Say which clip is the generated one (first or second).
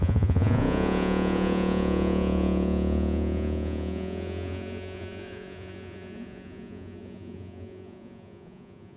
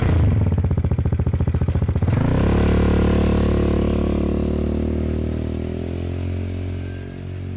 first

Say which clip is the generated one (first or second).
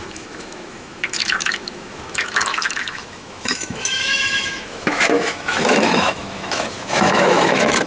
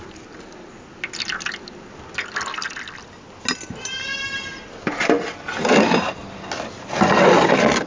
first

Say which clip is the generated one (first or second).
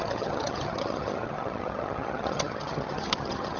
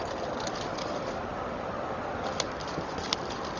first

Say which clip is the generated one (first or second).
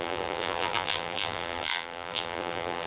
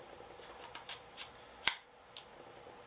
first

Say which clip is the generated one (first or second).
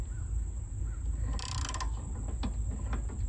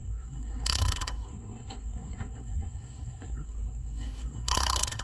second